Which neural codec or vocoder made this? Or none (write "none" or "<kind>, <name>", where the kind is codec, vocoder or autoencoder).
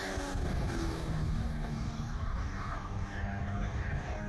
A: codec, DAC